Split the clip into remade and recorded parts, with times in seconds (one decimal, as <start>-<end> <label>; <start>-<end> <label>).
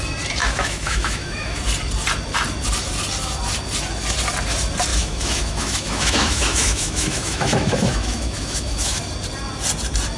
0.0-0.4 recorded; 0.4-1.6 remade; 1.6-4.9 recorded; 4.9-9.0 remade; 9.0-10.2 recorded